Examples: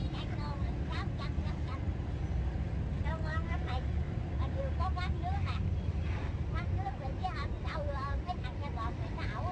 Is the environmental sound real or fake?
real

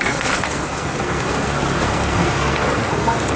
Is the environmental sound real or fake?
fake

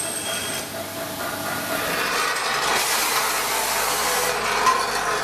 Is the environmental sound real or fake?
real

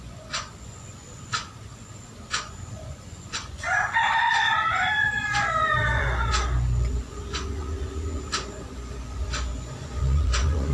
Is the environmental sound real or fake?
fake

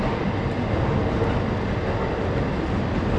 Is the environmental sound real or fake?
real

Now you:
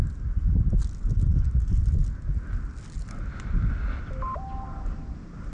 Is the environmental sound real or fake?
real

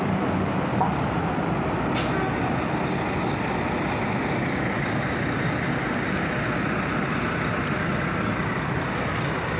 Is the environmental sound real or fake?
real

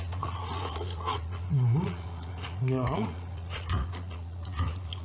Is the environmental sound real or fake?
fake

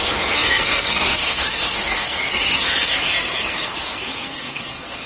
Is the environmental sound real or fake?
fake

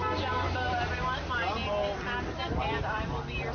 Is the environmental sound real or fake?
real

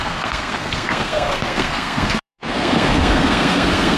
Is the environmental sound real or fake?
fake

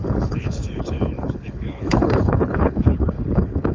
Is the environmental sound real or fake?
fake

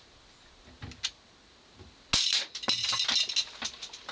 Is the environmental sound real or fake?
real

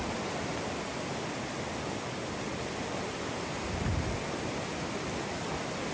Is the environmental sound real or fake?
real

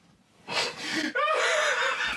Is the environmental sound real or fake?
fake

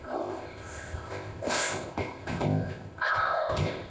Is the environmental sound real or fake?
fake